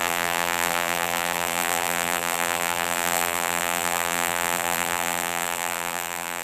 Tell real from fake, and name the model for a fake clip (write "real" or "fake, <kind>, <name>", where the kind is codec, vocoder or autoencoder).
fake, vocoder, BigVGAN v2